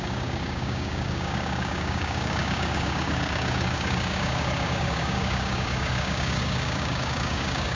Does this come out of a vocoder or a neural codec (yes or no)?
yes